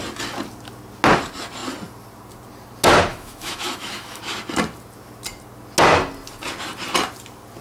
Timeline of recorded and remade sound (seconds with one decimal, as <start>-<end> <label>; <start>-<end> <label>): 0.0-3.1 recorded; 3.1-4.2 remade; 4.2-7.6 recorded